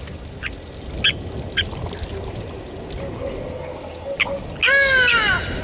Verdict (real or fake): real